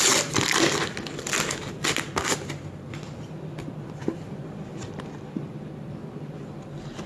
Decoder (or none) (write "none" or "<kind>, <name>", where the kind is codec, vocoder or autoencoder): none